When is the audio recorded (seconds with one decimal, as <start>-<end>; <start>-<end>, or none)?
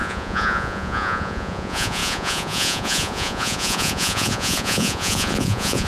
none